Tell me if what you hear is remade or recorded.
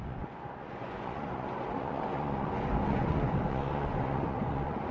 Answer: remade